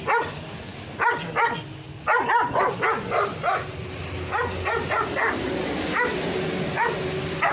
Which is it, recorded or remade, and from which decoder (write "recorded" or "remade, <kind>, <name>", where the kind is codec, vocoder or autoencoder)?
recorded